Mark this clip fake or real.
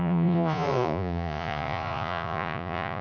fake